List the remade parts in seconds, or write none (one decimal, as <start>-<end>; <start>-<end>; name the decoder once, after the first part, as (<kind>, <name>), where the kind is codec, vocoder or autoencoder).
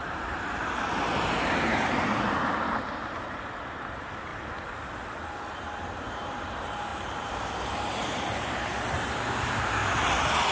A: 0.0-4.3 (vocoder, BigVGAN v2); 5.5-8.7; 9.4-9.8